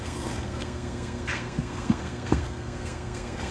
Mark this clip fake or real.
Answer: fake